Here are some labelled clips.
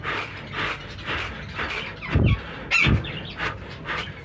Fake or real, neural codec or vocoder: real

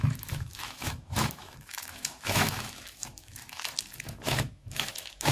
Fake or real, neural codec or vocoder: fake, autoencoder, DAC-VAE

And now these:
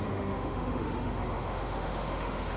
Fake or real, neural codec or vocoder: fake, autoencoder, DAC-VAE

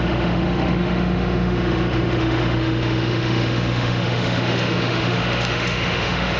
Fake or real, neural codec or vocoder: fake, autoencoder, DAC-VAE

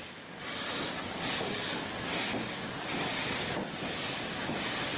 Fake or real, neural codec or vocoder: real